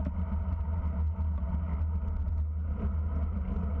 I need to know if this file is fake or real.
real